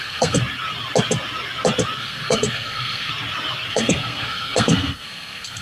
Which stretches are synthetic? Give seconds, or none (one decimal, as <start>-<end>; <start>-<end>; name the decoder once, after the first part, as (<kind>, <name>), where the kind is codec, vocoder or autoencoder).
0.0-0.4 (codec, SNAC); 2.0-3.1; 3.7-5.6